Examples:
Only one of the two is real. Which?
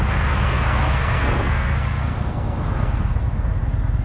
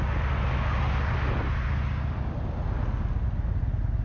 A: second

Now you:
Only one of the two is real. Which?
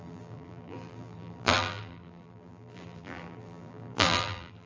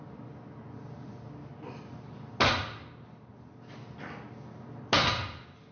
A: second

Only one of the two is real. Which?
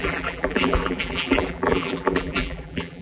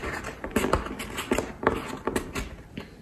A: second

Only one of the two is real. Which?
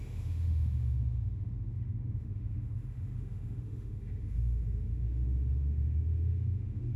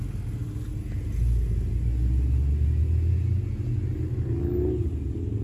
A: second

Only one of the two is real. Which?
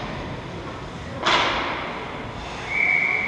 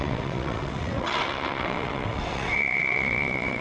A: first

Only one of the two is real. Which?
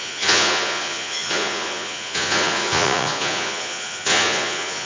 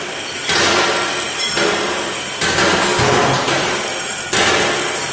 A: second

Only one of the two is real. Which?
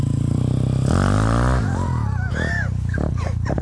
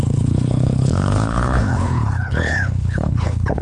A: first